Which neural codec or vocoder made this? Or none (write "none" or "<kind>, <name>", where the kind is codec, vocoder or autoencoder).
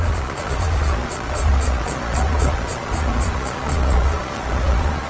vocoder, Vocos